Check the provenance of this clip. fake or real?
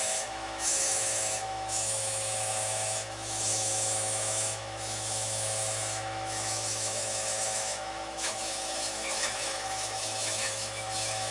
fake